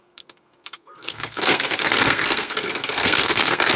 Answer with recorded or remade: remade